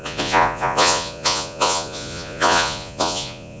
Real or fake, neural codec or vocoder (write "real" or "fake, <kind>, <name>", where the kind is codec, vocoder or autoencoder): fake, vocoder, Vocos